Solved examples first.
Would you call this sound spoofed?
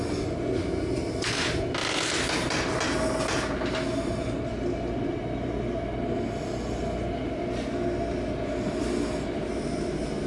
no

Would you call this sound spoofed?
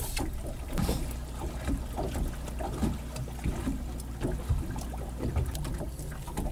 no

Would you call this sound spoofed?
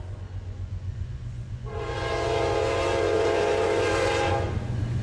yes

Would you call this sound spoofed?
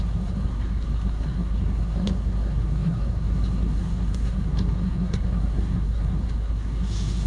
yes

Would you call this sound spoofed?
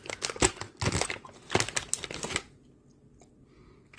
no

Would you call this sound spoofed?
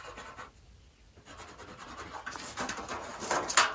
no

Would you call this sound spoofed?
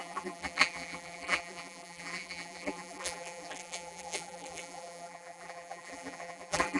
yes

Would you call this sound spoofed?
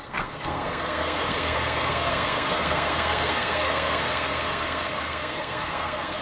yes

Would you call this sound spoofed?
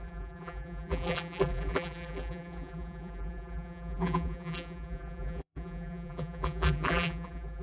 yes